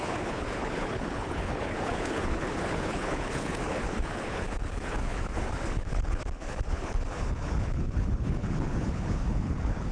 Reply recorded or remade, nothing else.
remade